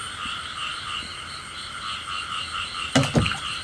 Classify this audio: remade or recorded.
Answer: recorded